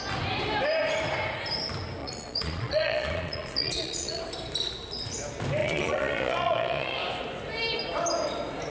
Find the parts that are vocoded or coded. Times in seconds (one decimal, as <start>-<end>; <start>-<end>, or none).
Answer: 2.0-4.2; 5.6-7.0